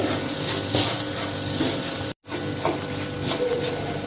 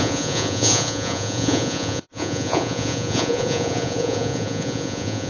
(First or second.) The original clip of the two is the first